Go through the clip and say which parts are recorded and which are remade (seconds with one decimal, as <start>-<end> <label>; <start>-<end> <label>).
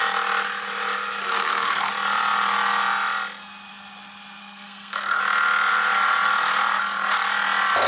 0.0-1.2 recorded; 1.2-1.9 remade; 1.9-4.4 recorded; 4.4-5.2 remade; 5.2-7.9 recorded